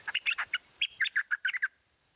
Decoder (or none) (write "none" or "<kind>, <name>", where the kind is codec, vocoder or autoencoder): vocoder, BigVGAN v2